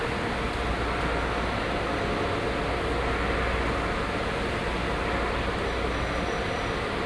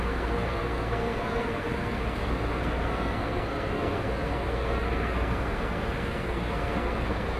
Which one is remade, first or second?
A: second